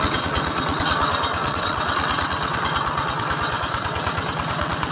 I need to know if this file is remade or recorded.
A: remade